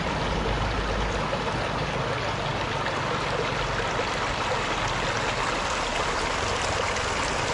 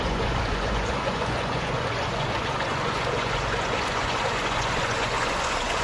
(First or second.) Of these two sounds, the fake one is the second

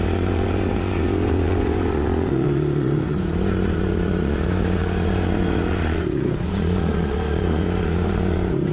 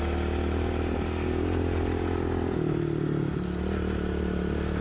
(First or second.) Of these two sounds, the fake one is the first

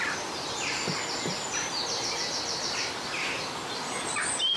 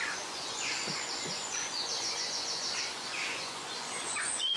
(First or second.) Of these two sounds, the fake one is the second